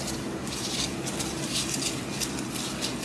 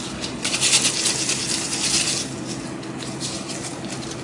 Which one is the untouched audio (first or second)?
second